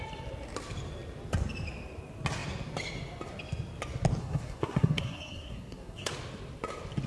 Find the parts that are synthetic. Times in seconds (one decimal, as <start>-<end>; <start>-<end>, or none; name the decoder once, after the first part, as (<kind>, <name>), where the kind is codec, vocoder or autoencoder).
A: 4.2-6.1 (codec, SNAC)